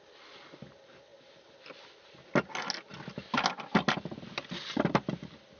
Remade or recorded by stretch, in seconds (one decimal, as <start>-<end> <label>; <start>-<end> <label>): 0.0-5.6 recorded

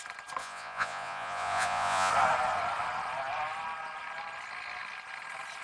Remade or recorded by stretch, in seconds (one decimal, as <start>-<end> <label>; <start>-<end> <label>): 0.0-0.4 recorded; 0.4-2.1 remade; 2.1-5.6 recorded

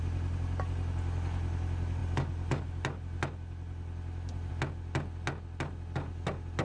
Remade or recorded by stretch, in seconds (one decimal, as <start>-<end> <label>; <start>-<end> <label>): 0.0-6.6 recorded